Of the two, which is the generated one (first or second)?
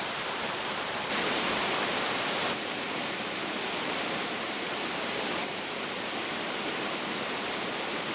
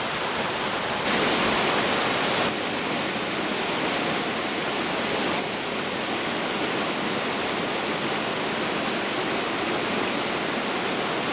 first